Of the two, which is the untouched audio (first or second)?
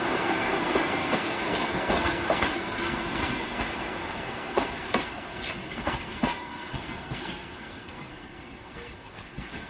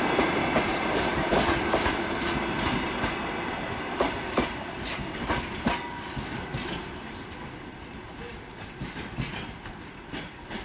second